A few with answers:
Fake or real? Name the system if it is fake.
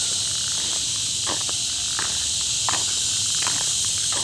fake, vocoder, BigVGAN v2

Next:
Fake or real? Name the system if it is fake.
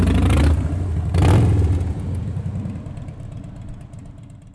real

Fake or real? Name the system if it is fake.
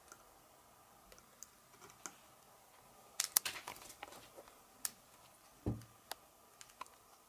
real